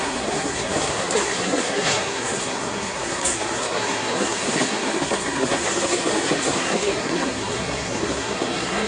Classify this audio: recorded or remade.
remade